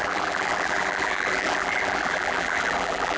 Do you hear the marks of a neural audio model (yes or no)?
yes